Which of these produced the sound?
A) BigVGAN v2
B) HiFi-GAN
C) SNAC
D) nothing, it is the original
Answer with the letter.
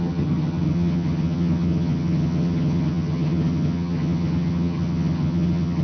B